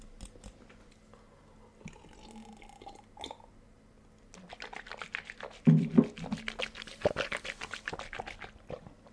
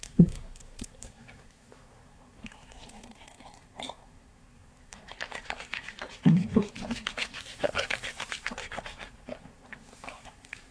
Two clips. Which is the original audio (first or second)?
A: first